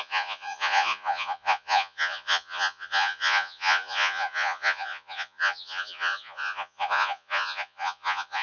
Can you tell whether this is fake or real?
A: fake